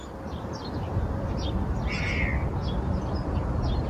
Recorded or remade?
recorded